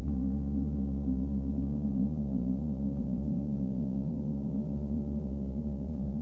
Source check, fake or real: fake